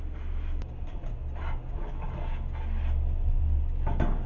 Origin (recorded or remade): recorded